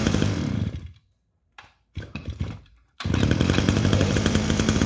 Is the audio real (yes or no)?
no